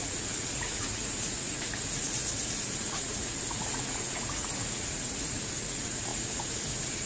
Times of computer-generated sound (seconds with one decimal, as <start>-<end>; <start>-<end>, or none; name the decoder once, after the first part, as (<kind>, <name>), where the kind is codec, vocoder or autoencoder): 0.0-7.1 (vocoder, Vocos)